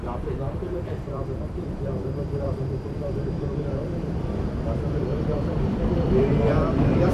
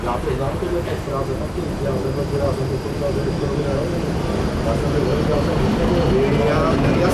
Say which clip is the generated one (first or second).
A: first